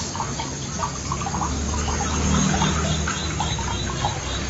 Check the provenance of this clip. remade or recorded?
recorded